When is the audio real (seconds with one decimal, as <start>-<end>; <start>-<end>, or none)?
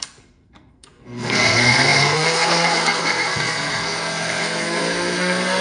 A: none